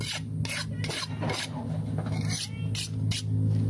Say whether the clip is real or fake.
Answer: real